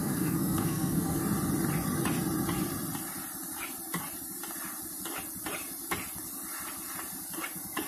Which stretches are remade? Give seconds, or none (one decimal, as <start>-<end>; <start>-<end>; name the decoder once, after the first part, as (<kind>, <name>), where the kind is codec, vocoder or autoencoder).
0.0-1.2 (codec, SNAC)